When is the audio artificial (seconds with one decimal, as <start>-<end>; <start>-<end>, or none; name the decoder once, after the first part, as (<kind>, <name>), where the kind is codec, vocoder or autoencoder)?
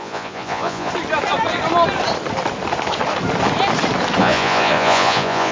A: 0.0-0.9 (vocoder, Vocos); 4.2-5.5